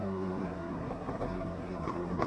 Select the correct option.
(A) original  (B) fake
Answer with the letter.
B